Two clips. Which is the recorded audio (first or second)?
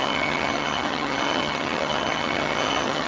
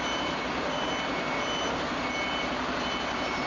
second